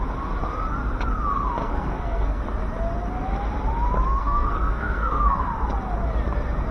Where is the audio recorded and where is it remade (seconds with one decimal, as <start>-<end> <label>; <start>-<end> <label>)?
0.0-1.6 recorded; 1.6-2.4 remade; 2.4-4.2 recorded; 4.2-5.4 remade; 5.4-6.7 recorded